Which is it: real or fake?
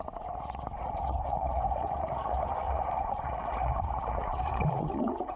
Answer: fake